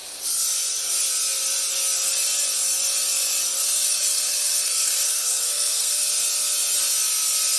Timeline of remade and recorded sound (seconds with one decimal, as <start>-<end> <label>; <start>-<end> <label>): 0.0-3.6 recorded; 3.6-6.1 remade; 6.1-7.6 recorded